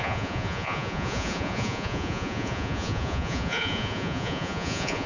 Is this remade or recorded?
remade